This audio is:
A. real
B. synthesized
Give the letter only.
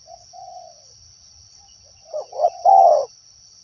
B